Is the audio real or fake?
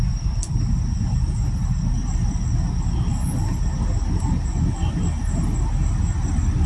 real